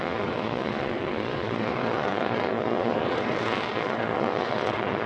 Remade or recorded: remade